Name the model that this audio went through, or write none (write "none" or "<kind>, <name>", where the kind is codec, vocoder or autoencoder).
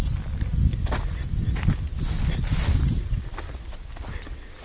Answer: none